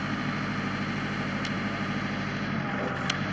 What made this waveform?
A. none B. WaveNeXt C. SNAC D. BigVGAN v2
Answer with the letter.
A